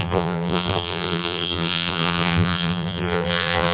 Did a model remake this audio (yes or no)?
yes